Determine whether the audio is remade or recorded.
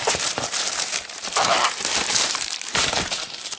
remade